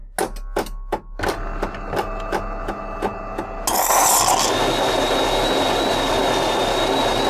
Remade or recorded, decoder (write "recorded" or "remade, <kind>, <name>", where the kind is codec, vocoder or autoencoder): recorded